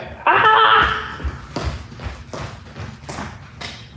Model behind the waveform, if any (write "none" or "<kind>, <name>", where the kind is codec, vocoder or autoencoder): none